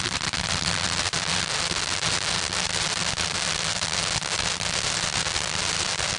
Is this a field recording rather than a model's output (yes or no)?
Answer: yes